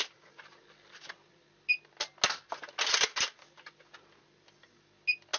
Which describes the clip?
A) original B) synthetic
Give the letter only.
A